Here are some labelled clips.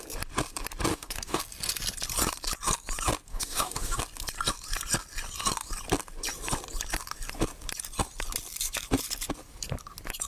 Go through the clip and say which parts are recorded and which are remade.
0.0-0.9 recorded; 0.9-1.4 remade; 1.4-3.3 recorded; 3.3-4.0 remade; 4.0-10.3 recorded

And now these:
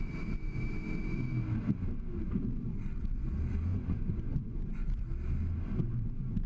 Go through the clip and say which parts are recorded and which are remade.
0.0-3.7 recorded; 3.7-5.0 remade; 5.0-6.5 recorded